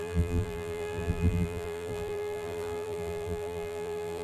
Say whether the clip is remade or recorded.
remade